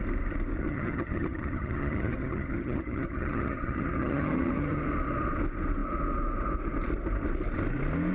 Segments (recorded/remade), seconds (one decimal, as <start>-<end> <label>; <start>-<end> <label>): 0.0-0.6 recorded; 0.6-4.8 remade; 4.8-8.1 recorded